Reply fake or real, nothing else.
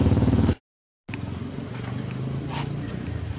real